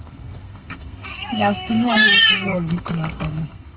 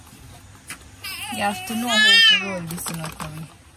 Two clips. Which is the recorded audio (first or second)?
second